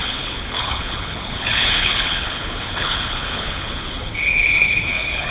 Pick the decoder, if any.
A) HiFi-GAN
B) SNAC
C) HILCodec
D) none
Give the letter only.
C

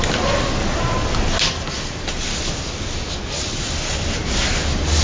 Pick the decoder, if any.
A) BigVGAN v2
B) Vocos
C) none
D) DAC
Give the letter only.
C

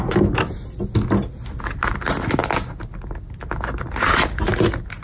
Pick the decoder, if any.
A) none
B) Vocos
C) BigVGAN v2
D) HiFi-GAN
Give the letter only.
A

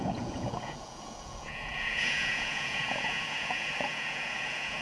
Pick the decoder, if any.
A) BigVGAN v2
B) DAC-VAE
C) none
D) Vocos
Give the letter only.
D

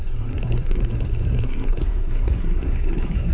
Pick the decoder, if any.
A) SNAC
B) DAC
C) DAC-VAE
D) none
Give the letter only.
A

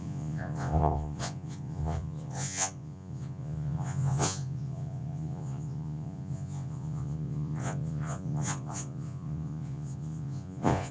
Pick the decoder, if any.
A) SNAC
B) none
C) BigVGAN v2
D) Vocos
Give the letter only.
D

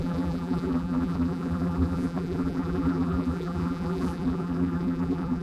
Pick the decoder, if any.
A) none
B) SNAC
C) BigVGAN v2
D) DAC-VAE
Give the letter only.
C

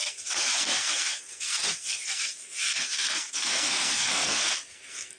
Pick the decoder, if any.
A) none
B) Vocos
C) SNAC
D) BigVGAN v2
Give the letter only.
C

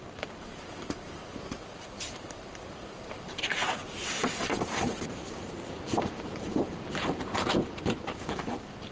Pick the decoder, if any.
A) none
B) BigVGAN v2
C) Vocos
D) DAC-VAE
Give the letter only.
B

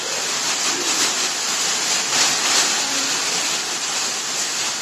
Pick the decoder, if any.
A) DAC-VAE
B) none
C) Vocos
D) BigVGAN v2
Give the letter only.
B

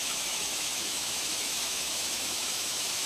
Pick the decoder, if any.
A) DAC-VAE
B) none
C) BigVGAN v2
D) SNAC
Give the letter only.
A